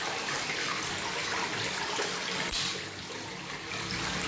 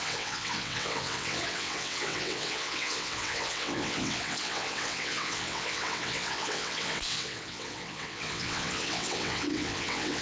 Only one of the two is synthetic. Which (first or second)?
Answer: second